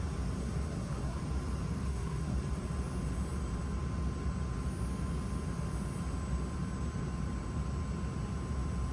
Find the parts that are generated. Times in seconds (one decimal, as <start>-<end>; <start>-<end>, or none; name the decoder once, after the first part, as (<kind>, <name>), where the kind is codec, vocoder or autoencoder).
0.4-1.2 (codec, SNAC); 1.8-2.4